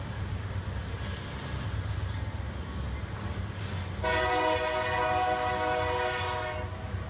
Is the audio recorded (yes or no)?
yes